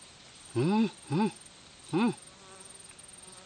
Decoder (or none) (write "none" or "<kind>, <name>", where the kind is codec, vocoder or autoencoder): none